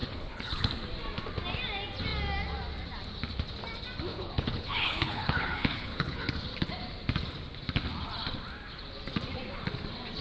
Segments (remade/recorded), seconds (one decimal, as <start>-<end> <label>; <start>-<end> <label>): 0.0-0.7 remade; 0.7-4.1 recorded; 4.1-6.3 remade; 6.3-10.2 recorded